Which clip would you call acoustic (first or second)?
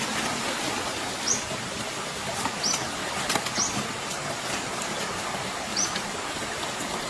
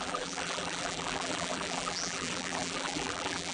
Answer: first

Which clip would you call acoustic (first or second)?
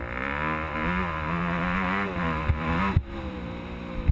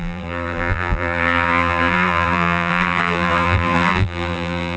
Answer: first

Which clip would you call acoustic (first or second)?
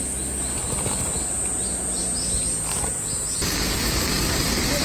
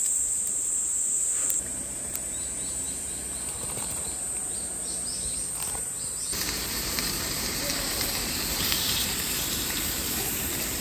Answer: first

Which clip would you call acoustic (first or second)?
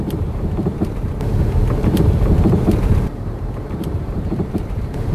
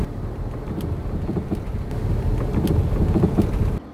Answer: second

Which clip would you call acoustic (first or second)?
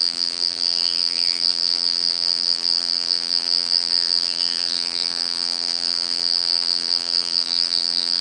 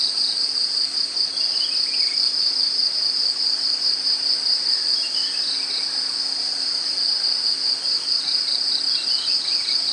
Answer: second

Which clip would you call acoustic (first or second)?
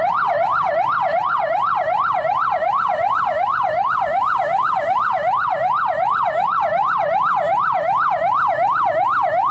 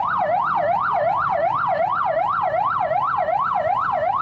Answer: second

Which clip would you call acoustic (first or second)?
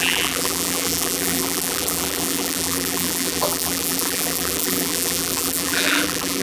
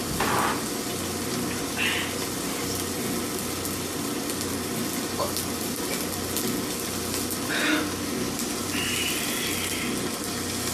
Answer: second